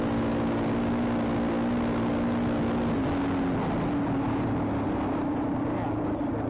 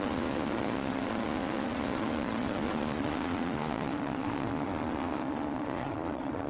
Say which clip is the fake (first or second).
second